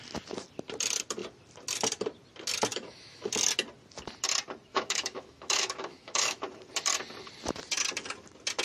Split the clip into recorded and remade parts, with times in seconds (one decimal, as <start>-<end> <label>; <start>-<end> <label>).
0.0-2.7 recorded; 2.7-3.3 remade; 3.3-4.7 recorded; 4.7-6.4 remade; 6.4-8.6 recorded